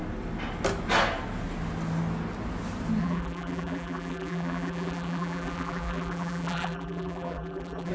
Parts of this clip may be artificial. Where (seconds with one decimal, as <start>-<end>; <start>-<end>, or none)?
3.0-7.9

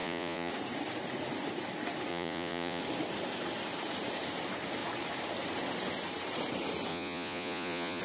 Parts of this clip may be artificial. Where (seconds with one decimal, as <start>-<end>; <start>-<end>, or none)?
0.0-0.5; 2.1-2.8; 6.9-8.0